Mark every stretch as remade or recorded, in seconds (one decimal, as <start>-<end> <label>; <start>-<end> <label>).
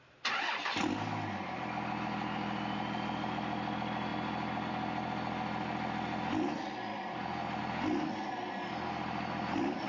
0.0-9.9 recorded